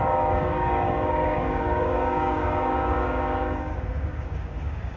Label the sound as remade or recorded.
remade